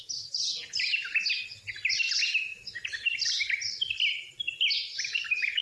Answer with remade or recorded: recorded